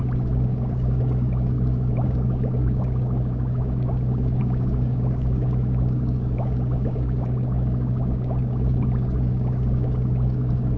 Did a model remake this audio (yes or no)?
yes